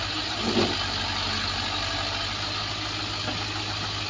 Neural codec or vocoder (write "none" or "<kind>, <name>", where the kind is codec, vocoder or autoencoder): none